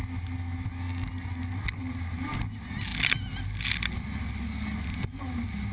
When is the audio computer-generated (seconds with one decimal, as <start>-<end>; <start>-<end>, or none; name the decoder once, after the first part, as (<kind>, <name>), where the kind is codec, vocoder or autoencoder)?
none